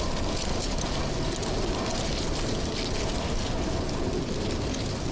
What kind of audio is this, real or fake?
real